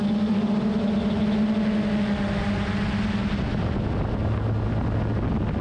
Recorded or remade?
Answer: recorded